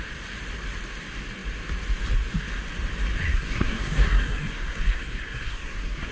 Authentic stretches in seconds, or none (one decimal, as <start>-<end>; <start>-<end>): 0.0-3.3